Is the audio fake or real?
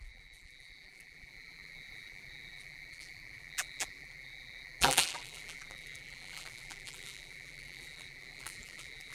fake